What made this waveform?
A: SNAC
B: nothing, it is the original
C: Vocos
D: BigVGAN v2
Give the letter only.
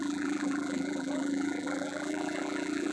D